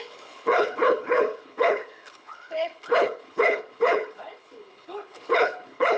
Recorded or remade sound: remade